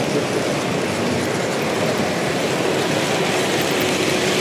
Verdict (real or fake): real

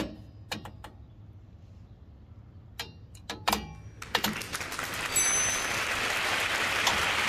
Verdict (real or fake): real